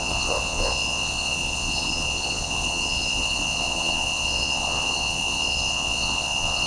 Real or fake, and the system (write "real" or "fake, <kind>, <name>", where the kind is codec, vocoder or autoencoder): fake, vocoder, Vocos